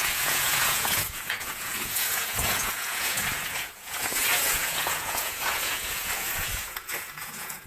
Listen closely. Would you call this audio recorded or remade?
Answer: remade